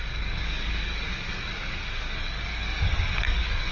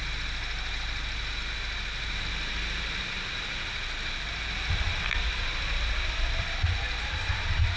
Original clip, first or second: second